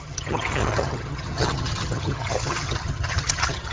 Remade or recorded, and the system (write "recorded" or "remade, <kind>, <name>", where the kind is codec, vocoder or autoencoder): remade, vocoder, HiFi-GAN